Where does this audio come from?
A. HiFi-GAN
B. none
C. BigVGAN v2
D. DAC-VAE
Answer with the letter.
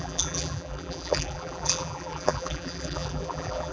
C